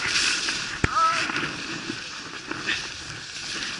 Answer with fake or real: fake